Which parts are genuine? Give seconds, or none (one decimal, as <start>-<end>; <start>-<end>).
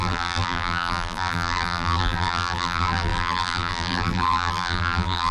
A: none